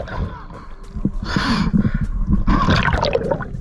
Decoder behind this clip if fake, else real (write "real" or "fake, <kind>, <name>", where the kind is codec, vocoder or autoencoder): real